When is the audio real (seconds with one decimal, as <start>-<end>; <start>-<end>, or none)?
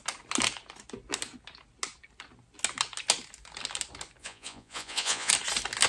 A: 0.0-4.2; 5.3-5.9